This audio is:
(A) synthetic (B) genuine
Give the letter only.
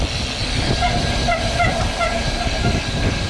B